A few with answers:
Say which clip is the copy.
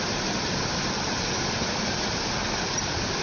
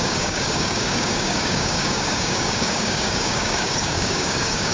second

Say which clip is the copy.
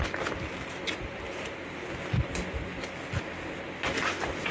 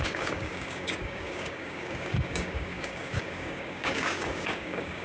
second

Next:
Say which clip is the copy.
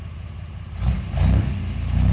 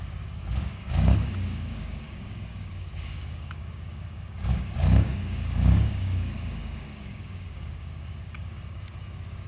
second